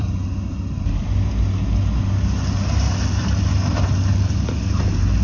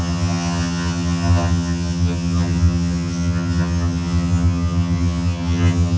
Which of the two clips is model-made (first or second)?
second